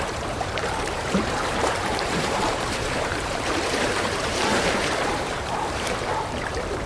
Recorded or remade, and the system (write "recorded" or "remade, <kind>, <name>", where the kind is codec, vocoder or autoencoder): remade, vocoder, BigVGAN v2